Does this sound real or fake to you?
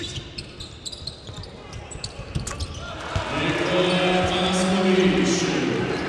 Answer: real